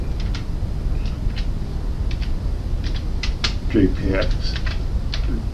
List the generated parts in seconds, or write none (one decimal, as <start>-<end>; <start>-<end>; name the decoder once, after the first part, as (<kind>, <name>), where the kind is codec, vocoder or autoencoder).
4.0-4.7 (vocoder, BigVGAN v2)